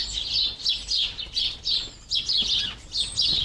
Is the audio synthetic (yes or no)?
no